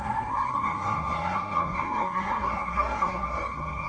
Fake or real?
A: fake